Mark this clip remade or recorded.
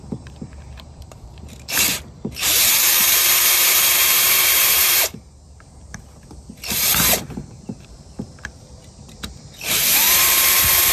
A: remade